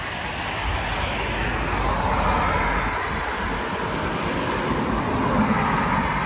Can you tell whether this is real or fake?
real